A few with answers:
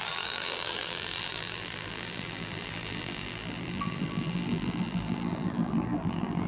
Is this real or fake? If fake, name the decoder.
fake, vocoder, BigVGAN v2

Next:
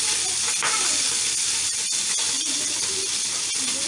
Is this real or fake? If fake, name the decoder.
real